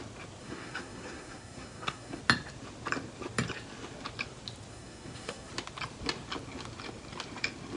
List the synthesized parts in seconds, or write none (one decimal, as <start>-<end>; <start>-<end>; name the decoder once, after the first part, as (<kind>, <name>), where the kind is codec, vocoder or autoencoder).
0.4-2.2 (codec, SNAC); 4.7-5.5

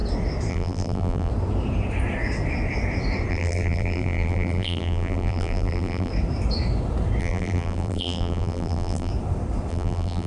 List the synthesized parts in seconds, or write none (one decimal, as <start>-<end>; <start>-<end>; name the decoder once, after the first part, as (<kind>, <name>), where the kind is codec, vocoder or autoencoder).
0.5-1.3 (vocoder, BigVGAN v2); 3.3-6.1; 7.2-9.1; 9.7-10.3

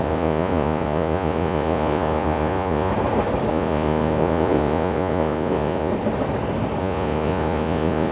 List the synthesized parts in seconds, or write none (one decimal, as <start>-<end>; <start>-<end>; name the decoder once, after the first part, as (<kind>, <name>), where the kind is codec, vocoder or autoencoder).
0.0-2.9 (vocoder, Vocos); 3.5-5.9; 6.8-8.1

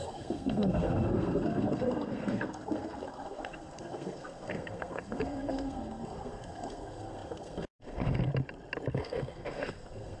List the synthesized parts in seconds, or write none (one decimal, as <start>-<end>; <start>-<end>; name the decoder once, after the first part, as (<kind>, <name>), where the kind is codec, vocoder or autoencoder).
0.0-8.3 (codec, SNAC); 8.9-10.2